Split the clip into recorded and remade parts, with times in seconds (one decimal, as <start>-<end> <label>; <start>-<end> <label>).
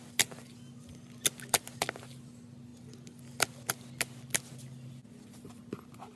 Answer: 0.0-6.2 recorded